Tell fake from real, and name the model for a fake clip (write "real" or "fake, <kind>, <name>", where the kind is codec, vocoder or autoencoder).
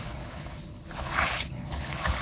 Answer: fake, codec, HILCodec